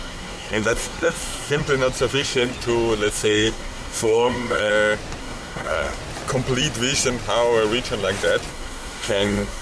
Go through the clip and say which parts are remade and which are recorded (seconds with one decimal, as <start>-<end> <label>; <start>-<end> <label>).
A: 0.0-1.6 remade; 1.6-2.1 recorded; 2.1-2.5 remade; 2.5-3.1 recorded; 3.1-4.7 remade; 4.7-5.2 recorded; 5.2-6.0 remade; 6.0-8.5 recorded; 8.5-9.6 remade